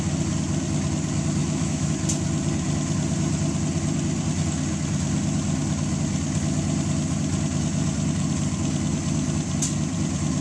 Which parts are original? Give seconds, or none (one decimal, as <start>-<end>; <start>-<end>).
0.0-1.4; 1.9-10.4